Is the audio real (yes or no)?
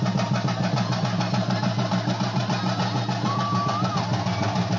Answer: yes